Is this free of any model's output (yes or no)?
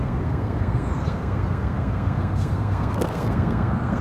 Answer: no